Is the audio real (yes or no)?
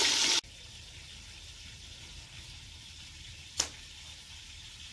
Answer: yes